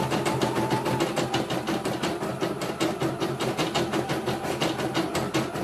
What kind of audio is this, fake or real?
real